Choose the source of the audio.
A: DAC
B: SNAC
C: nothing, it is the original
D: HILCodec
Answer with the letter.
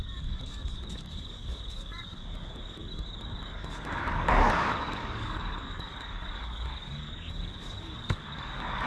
A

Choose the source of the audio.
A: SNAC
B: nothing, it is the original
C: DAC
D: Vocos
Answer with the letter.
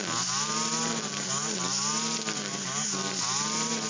B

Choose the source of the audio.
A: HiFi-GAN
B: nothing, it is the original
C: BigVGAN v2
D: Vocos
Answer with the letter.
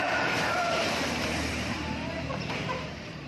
C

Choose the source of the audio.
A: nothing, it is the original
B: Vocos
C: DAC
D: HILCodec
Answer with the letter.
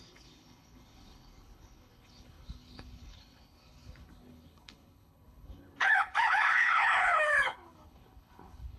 D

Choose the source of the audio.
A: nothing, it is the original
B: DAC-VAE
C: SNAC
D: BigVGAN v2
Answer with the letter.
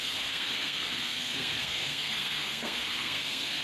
C